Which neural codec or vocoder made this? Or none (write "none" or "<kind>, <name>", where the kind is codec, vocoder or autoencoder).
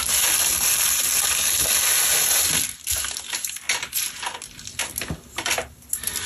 none